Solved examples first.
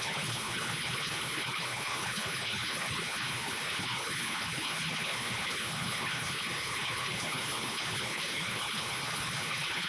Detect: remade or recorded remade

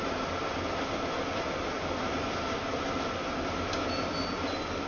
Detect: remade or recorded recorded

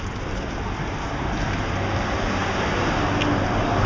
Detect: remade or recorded recorded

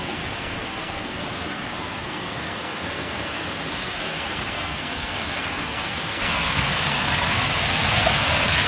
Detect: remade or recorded remade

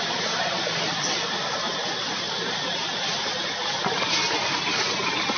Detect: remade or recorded remade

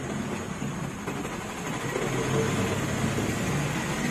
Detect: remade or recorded recorded